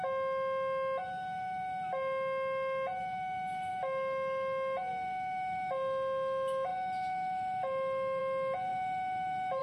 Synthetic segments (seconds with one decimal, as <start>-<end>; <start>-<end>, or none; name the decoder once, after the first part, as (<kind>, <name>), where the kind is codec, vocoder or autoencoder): none